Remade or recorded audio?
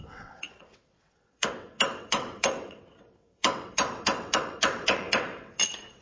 remade